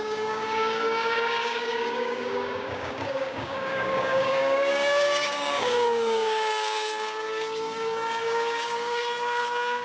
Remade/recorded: remade